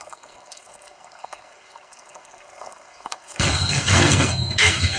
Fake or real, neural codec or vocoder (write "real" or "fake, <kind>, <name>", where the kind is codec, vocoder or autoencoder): fake, codec, SNAC